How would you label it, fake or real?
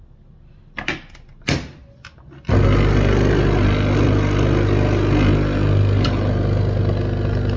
real